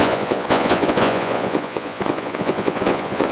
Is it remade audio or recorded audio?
remade